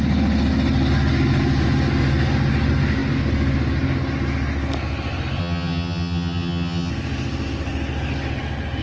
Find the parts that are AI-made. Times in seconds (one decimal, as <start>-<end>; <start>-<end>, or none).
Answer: 5.4-6.9